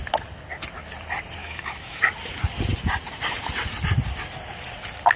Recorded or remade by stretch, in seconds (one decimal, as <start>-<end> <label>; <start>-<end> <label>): 0.0-1.4 recorded; 1.4-2.0 remade; 2.0-5.2 recorded